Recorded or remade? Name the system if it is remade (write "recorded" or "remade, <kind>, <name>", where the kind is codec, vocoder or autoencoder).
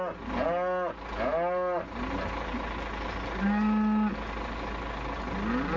recorded